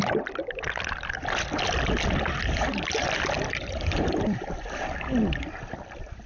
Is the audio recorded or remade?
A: remade